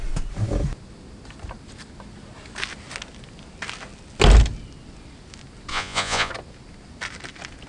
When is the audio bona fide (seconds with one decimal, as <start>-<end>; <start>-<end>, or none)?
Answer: 0.0-5.7; 6.3-7.7